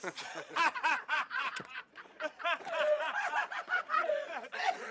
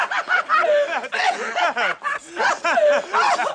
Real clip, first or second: second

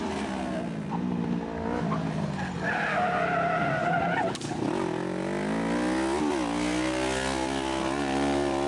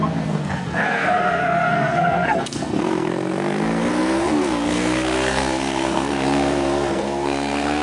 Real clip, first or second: first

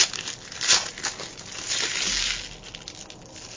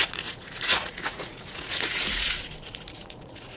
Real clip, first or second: first